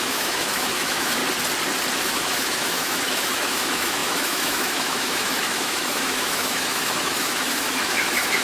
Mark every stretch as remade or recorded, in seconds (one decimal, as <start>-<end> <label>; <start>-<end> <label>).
0.0-1.2 remade; 1.2-2.0 recorded; 2.0-8.4 remade